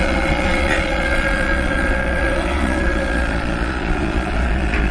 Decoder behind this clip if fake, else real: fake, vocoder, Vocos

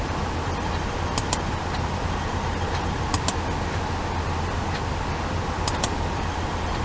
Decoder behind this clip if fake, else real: real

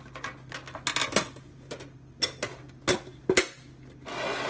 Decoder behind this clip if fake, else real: real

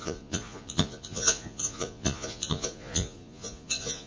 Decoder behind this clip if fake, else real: fake, vocoder, Vocos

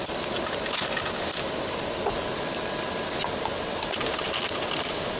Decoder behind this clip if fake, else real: real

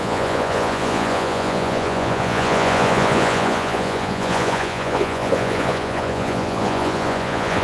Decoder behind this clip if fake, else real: fake, vocoder, Vocos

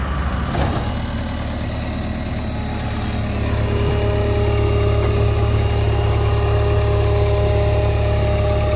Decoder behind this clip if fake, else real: real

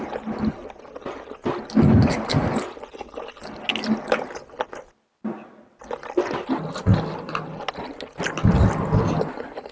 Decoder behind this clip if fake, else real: real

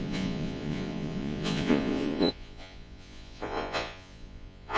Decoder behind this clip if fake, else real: fake, vocoder, Vocos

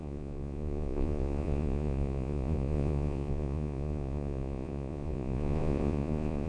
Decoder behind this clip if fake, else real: fake, vocoder, Vocos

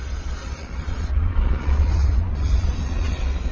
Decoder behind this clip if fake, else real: fake, vocoder, Vocos